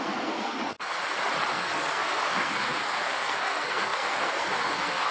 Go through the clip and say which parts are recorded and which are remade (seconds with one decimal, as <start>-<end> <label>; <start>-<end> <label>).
0.0-1.0 remade; 1.0-1.5 recorded; 1.5-5.1 remade